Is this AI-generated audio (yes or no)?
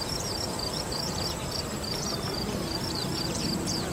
yes